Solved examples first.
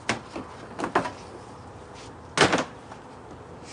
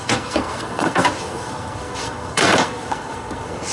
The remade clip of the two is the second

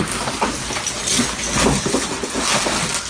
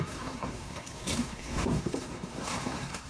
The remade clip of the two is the second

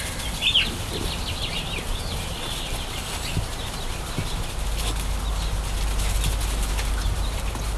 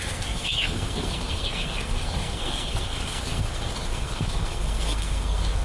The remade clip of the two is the second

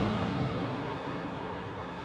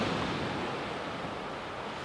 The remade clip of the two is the first